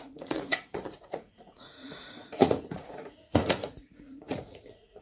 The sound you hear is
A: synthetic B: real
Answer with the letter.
A